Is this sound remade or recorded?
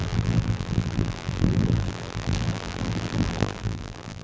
remade